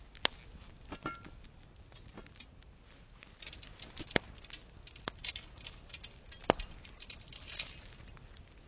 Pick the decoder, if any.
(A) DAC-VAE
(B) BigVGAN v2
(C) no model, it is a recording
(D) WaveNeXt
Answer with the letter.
C